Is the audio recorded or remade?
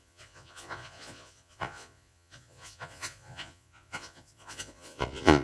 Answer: remade